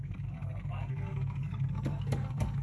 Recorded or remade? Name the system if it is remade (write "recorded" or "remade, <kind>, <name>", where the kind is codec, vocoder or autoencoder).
remade, codec, SNAC